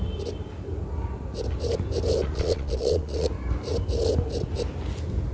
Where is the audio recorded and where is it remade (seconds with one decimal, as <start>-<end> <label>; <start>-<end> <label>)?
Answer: 0.0-2.2 recorded; 2.2-3.3 remade; 3.3-5.3 recorded